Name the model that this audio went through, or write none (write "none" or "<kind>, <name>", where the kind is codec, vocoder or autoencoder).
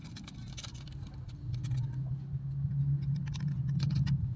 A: none